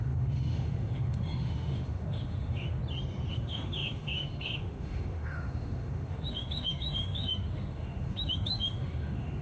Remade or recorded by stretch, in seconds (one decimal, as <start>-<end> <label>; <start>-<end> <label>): 0.0-2.8 remade; 2.8-3.3 recorded; 3.3-9.4 remade